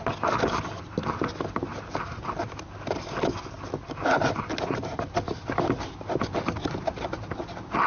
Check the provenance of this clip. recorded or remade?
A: recorded